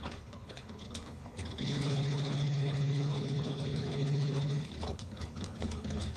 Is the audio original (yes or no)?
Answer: no